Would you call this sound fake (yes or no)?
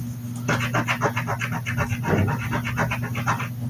no